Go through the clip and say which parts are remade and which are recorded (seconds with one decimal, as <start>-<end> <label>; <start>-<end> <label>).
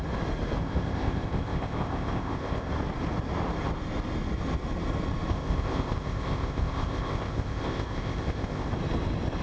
0.0-0.6 recorded; 0.6-2.7 remade; 2.7-5.3 recorded; 5.3-8.7 remade; 8.7-9.4 recorded